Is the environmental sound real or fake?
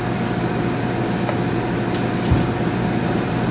real